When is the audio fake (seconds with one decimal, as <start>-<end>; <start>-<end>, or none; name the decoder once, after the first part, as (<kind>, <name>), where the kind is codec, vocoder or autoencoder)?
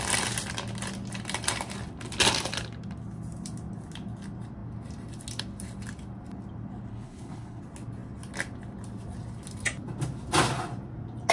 6.9-7.6 (codec, HILCodec)